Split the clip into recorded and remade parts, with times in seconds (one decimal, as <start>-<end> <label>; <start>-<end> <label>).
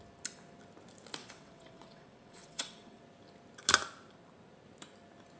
0.0-1.2 recorded; 1.2-3.0 remade; 3.0-5.4 recorded